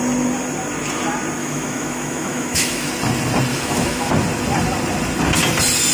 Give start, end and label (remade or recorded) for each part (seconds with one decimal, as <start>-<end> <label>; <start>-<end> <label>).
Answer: 0.0-1.4 recorded; 1.4-2.9 remade; 2.9-3.5 recorded; 3.5-4.1 remade; 4.1-5.9 recorded